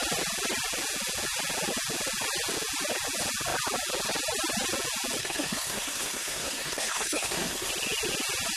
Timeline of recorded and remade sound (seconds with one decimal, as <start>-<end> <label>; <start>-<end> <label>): 0.0-5.2 recorded; 5.2-7.7 remade; 7.7-8.6 recorded